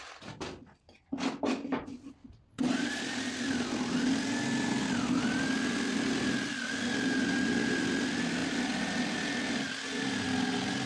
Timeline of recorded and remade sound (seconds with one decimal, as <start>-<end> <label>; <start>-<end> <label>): 0.0-2.5 recorded; 2.5-3.0 remade; 3.0-10.9 recorded